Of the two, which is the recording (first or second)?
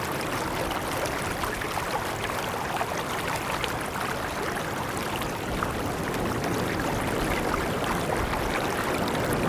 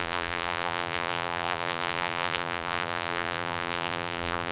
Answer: first